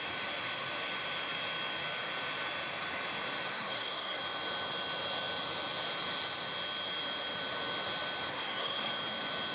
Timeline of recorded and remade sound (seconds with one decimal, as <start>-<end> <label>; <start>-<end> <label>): 0.0-3.5 recorded; 3.5-4.2 remade; 4.2-8.3 recorded; 8.3-8.9 remade; 8.9-9.5 recorded